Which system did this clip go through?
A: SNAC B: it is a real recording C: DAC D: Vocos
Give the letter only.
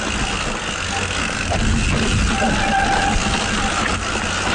B